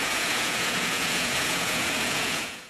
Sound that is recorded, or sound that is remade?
remade